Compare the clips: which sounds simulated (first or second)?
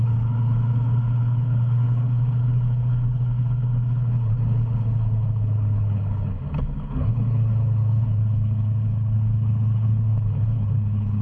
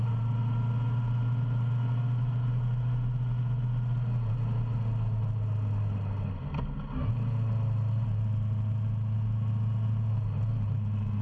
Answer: first